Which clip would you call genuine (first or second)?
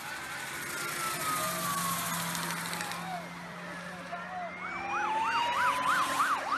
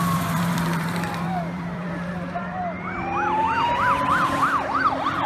first